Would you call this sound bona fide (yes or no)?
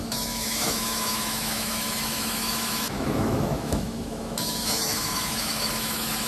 no